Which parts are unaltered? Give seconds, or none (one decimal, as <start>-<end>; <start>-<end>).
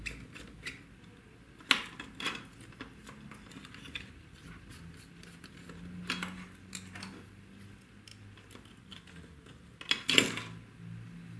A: 0.0-11.4